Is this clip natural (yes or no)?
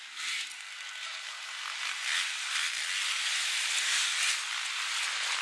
yes